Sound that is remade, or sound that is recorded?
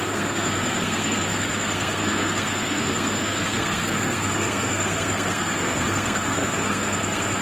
remade